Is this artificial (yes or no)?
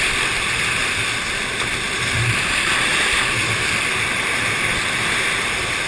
no